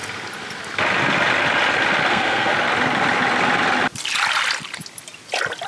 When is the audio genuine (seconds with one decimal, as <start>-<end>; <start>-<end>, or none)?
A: 0.0-2.1; 2.5-5.7